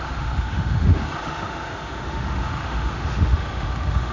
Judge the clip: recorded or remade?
remade